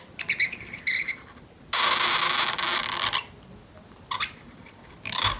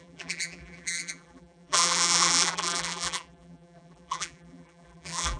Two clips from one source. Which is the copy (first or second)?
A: second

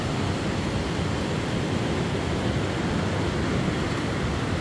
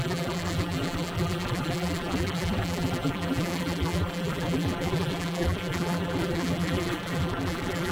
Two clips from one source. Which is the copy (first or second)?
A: second